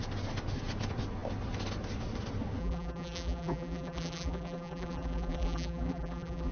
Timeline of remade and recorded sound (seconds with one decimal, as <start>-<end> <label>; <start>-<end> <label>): 0.0-2.6 recorded; 2.6-6.5 remade